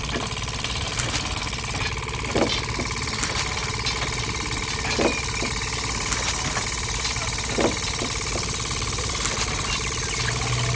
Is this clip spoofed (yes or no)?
no